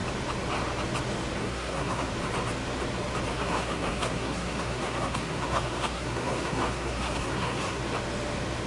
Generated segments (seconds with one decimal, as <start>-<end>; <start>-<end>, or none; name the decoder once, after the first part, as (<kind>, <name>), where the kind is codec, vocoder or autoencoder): 1.4-2.1 (codec, SNAC); 3.3-7.8